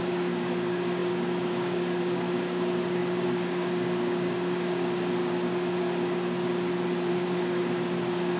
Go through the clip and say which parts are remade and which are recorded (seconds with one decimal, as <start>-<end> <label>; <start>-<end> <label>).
0.0-5.8 remade; 5.8-7.1 recorded; 7.1-8.4 remade